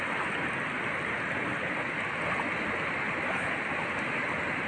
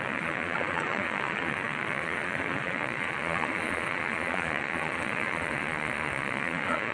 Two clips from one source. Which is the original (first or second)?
first